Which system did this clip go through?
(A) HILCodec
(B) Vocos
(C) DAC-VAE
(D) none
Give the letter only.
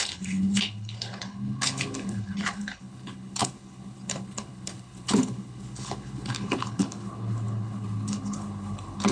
A